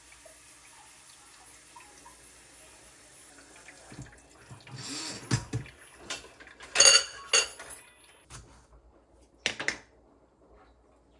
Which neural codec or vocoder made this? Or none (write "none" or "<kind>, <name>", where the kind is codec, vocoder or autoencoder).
none